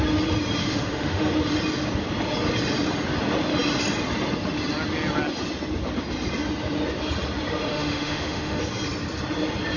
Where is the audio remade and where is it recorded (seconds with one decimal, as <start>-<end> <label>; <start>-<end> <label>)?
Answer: 0.0-0.6 recorded; 0.6-1.3 remade; 1.3-7.7 recorded; 7.7-8.6 remade; 8.6-9.8 recorded